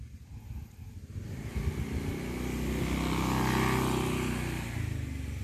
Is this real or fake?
real